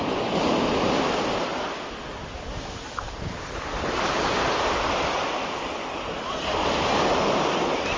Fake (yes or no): no